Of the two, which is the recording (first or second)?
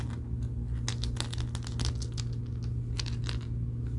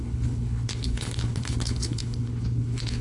first